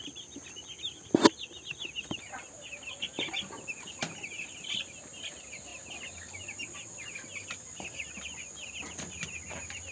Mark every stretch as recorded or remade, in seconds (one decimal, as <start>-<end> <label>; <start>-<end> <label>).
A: 0.0-9.9 recorded